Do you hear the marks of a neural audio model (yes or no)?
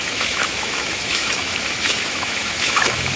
yes